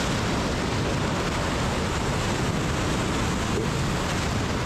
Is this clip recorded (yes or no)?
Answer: yes